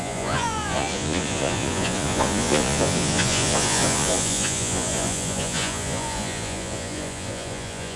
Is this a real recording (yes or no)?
no